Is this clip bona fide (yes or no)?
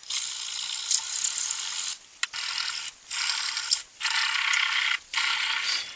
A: yes